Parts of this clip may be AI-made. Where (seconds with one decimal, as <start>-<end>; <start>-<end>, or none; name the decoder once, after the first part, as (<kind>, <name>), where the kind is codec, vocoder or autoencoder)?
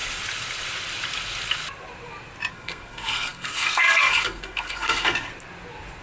2.5-5.3 (codec, SNAC)